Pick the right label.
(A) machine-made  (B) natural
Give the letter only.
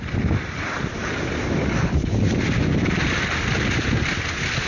B